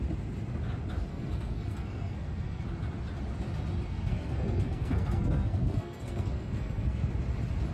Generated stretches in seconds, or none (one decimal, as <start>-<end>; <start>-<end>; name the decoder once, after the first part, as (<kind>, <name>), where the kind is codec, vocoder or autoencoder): 1.1-2.6 (codec, SNAC); 3.9-7.1